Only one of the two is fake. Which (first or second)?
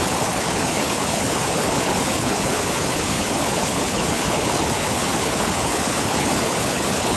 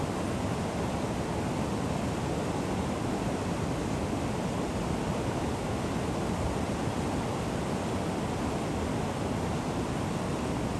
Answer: first